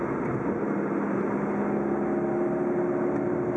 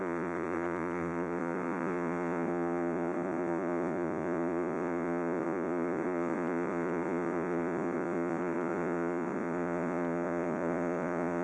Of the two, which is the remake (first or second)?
second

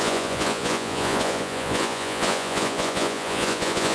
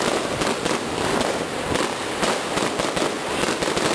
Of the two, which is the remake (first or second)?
first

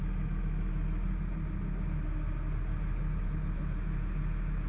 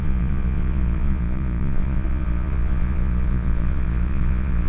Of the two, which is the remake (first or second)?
second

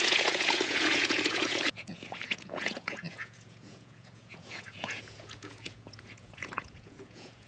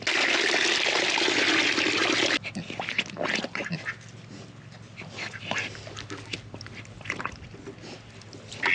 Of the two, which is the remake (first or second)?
first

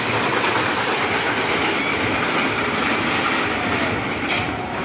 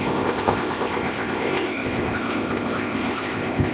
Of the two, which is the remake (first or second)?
second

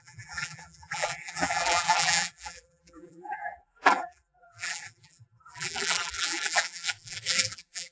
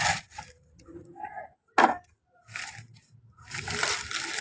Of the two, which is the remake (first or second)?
first